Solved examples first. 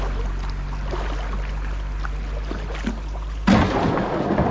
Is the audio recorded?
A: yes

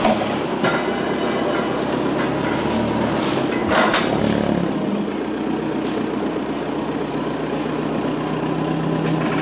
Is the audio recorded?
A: yes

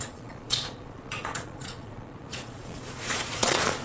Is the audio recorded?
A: no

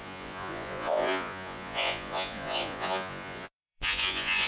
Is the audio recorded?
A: no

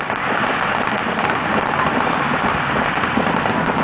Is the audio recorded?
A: yes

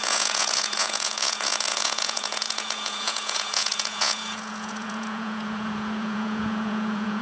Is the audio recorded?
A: no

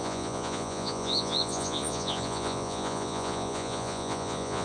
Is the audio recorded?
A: no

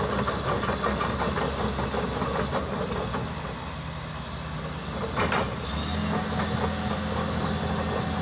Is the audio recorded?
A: yes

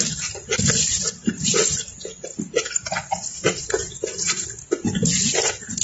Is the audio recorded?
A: yes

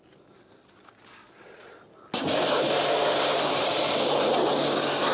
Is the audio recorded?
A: yes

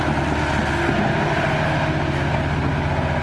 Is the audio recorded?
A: yes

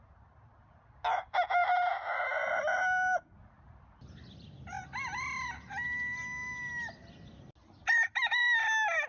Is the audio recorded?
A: yes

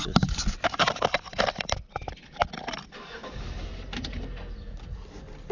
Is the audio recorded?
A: yes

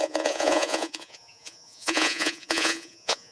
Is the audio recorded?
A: no